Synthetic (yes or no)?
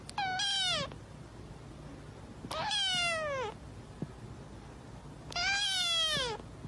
no